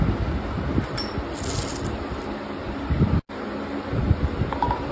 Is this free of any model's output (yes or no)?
yes